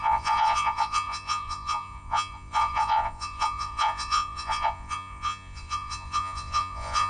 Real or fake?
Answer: fake